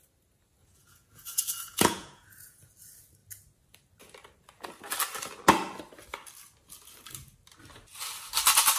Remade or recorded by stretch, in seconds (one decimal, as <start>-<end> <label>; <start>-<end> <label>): 0.0-0.6 recorded; 0.6-2.7 remade; 2.7-8.8 recorded